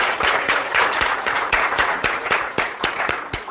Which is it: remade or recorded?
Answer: remade